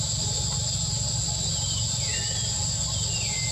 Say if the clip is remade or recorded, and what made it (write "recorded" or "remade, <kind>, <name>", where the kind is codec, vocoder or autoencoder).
recorded